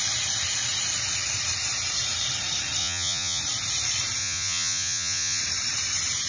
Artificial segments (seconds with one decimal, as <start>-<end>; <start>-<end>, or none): 2.8-3.4; 4.2-5.4